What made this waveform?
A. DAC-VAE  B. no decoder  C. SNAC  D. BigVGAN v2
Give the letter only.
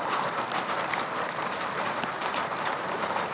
D